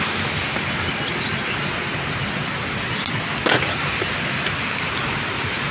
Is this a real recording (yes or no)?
yes